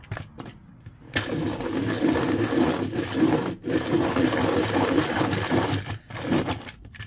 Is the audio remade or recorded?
recorded